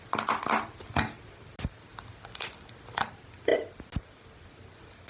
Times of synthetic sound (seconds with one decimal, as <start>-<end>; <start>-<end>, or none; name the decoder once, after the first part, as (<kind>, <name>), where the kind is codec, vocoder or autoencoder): none